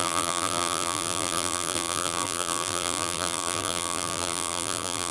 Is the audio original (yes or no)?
no